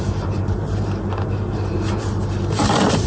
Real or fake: fake